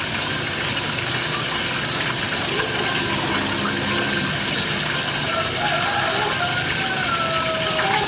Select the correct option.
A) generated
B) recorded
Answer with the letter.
B